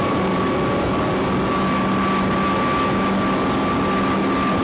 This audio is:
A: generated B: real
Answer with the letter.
B